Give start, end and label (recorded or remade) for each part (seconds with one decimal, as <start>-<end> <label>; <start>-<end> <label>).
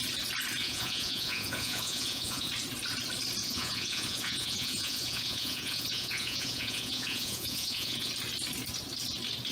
0.0-0.6 recorded; 0.6-2.5 remade; 2.5-3.4 recorded; 3.4-8.1 remade; 8.1-9.5 recorded